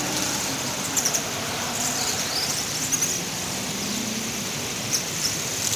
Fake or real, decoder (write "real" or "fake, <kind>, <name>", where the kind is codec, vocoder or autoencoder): real